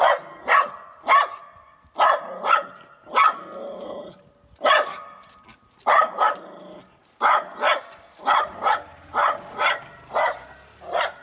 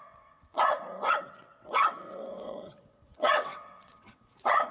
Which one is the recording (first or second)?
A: first